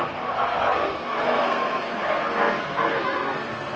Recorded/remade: remade